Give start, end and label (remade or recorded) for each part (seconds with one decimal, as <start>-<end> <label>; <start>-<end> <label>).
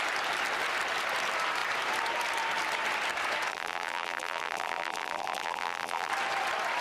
0.0-3.5 recorded; 3.5-6.1 remade; 6.1-6.8 recorded